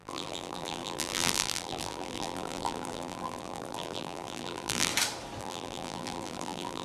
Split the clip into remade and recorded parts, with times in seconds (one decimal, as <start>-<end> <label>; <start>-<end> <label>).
0.0-4.9 remade; 4.9-5.4 recorded; 5.4-6.8 remade